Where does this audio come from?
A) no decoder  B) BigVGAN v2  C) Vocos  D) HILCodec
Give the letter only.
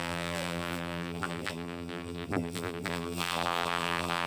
B